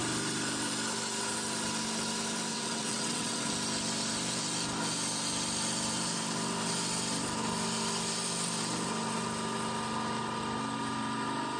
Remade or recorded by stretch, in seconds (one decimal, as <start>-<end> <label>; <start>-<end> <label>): 0.0-2.5 recorded; 2.5-3.5 remade; 3.5-11.6 recorded